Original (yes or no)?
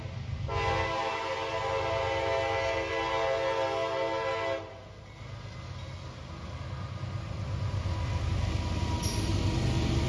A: yes